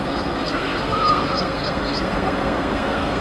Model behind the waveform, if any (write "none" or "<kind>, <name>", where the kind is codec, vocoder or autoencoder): codec, SNAC